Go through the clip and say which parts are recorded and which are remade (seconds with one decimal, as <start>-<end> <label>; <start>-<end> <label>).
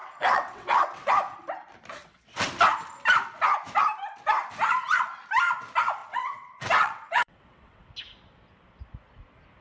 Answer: 0.0-1.1 remade; 1.1-2.0 recorded; 2.0-2.5 remade; 2.5-6.0 recorded; 6.0-7.9 remade; 7.9-9.6 recorded